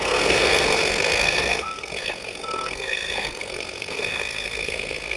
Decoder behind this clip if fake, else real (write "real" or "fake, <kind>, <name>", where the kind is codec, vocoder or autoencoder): fake, codec, SNAC